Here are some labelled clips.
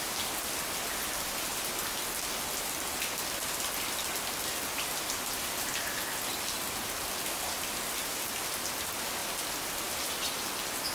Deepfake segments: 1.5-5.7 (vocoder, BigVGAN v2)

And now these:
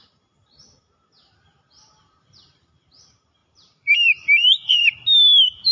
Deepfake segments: 3.4-4.8 (vocoder, BigVGAN v2)

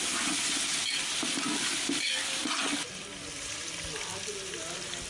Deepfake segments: 0.0-0.7 (vocoder, BigVGAN v2); 1.3-2.4; 2.9-5.1

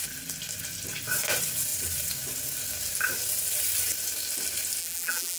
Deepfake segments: 4.8-5.4 (vocoder, BigVGAN v2)

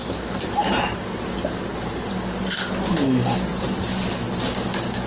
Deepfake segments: 0.0-2.1 (vocoder, BigVGAN v2); 3.5-4.1

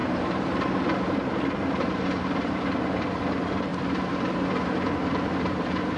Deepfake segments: 0.0-3.7 (vocoder, BigVGAN v2); 5.1-6.0

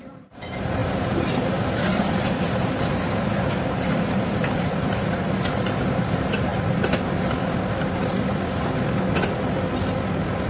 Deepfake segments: 0.0-6.5 (vocoder, BigVGAN v2)

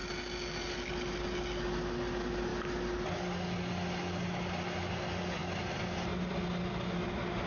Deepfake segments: none